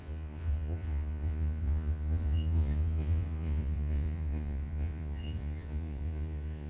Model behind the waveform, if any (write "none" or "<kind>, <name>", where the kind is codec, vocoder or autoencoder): vocoder, Vocos